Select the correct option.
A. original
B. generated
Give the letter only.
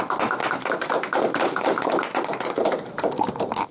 A